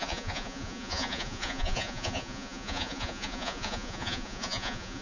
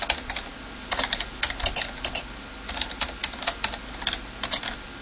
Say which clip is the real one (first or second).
second